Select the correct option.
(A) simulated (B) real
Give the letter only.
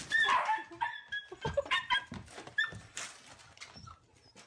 B